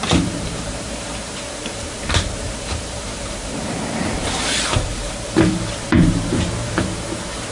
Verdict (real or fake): fake